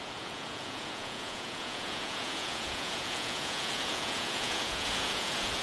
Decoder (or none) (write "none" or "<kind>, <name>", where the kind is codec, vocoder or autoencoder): vocoder, Vocos